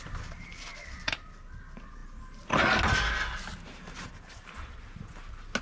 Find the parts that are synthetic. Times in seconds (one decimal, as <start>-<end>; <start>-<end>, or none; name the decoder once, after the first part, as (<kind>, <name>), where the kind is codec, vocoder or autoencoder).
0.7-1.3 (vocoder, BigVGAN v2)